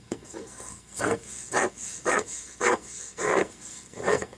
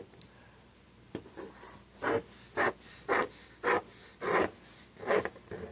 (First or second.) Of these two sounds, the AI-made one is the first